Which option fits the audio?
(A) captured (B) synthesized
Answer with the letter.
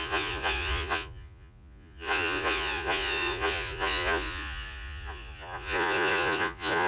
B